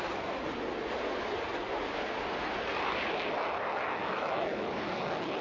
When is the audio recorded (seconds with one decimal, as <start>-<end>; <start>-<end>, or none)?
0.0-4.0; 4.7-5.4